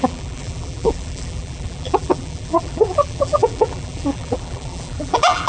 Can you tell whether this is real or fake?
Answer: fake